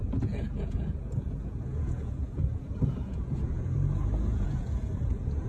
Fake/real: fake